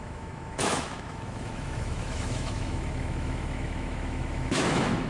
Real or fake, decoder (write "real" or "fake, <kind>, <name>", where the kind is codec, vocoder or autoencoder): fake, autoencoder, DAC-VAE